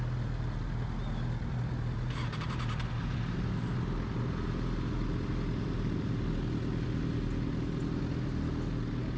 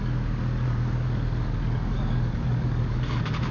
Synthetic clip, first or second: second